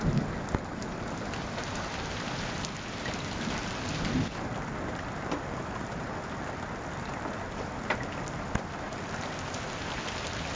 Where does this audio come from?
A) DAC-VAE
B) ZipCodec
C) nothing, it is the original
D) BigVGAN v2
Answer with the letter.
C